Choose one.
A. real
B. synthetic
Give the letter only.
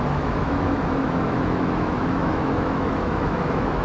B